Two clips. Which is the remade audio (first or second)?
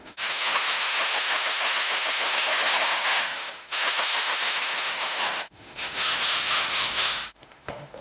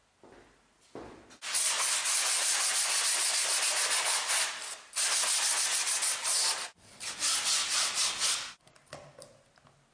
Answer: first